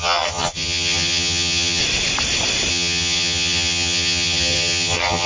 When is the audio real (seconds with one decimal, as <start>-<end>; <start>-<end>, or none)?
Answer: 1.8-2.7